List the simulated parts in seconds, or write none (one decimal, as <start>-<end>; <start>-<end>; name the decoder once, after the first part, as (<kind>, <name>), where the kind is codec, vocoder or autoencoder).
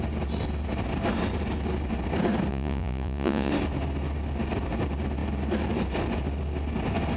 2.5-3.5 (vocoder, Vocos)